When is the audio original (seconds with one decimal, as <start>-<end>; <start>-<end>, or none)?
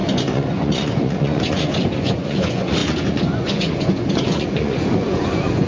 none